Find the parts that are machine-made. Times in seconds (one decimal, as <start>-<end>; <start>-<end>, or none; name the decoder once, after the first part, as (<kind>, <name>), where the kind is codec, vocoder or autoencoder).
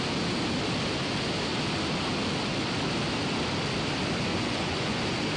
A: 4.3-5.0 (vocoder, Vocos)